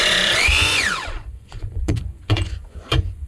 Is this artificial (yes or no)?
yes